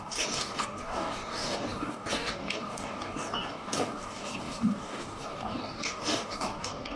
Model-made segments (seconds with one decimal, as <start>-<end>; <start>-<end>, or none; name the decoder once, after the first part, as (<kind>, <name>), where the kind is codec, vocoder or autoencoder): 0.0-7.0 (codec, DAC)